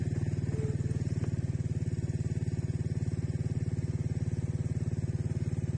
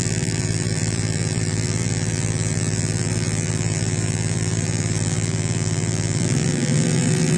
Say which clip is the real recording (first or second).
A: first